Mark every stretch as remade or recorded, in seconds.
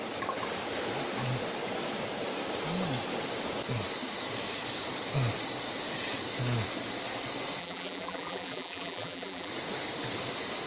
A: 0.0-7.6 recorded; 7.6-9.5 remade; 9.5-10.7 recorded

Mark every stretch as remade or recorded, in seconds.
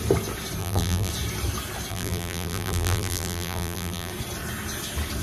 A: 0.0-0.6 recorded; 0.6-1.1 remade; 1.1-1.9 recorded; 1.9-4.1 remade; 4.1-5.2 recorded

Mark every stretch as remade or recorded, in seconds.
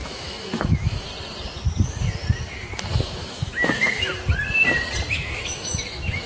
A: 0.0-1.1 remade; 1.1-2.9 recorded; 2.9-4.1 remade; 4.1-5.1 recorded; 5.1-6.3 remade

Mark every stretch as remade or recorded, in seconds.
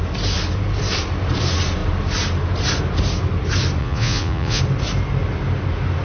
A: 0.0-3.8 recorded; 3.8-4.6 remade; 4.6-6.0 recorded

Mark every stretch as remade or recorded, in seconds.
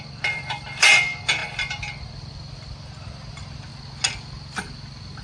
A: 0.0-3.7 remade; 3.7-4.6 recorded; 4.6-5.2 remade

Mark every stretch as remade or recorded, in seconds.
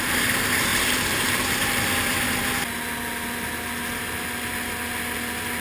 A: 0.0-0.7 recorded; 0.7-2.4 remade; 2.4-5.6 recorded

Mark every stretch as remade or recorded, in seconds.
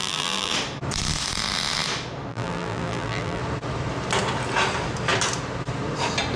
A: 0.0-0.5 remade; 0.5-2.3 recorded; 2.3-3.4 remade; 3.4-6.4 recorded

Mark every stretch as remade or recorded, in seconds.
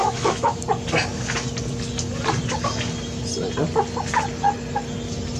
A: 0.0-0.6 remade; 0.6-5.4 recorded